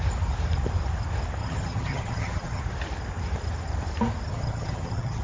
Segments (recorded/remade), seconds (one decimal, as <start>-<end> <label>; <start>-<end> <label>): 0.0-1.4 recorded; 1.4-2.6 remade; 2.6-4.3 recorded; 4.3-5.2 remade